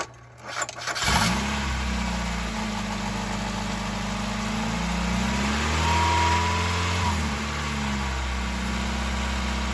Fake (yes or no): no